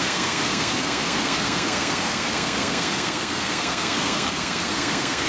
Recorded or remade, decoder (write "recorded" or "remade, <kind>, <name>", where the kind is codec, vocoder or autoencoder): remade, codec, SNAC